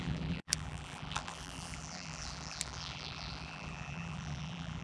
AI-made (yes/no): yes